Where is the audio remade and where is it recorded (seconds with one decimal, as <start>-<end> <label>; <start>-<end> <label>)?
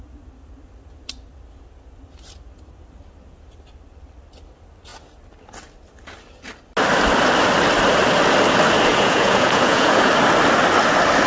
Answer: 0.0-8.9 recorded; 8.9-10.1 remade; 10.1-11.3 recorded